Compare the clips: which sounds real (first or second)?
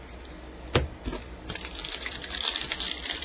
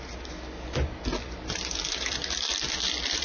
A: second